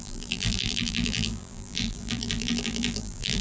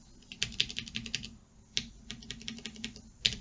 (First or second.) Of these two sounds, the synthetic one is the first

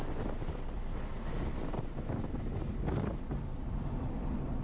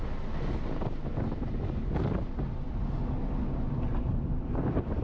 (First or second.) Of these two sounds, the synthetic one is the first